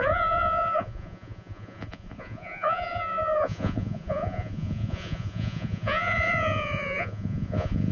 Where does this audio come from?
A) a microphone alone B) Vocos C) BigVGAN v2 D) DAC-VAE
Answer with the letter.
B